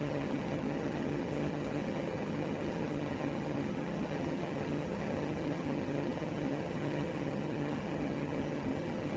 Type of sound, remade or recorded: remade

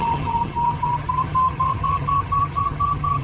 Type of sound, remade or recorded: remade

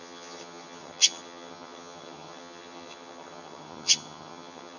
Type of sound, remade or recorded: remade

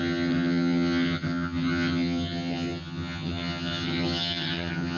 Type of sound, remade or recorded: remade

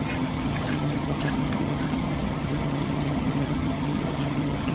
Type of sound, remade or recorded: remade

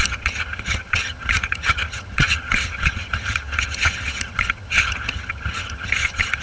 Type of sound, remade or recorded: remade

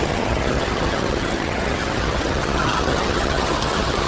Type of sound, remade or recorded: remade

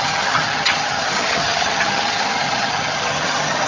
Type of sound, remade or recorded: remade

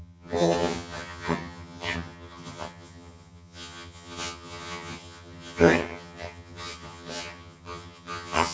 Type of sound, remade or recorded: remade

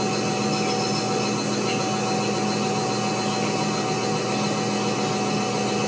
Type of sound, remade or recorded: recorded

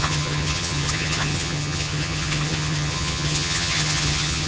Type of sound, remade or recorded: remade